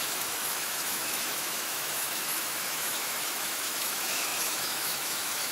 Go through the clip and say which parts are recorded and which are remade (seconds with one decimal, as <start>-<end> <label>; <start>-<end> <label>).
0.0-5.5 remade